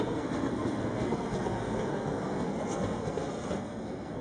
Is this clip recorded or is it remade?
remade